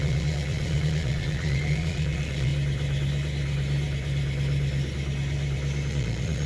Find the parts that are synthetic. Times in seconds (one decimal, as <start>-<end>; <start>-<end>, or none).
0.0-2.5; 5.9-6.5